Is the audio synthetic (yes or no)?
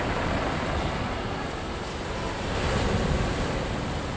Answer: no